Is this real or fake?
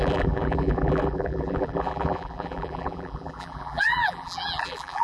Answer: fake